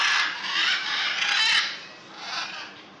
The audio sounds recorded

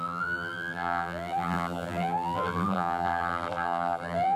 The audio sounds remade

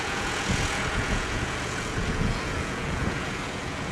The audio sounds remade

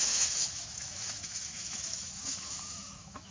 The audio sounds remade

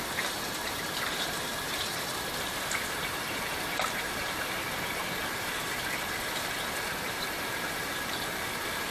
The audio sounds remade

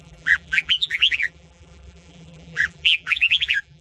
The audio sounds remade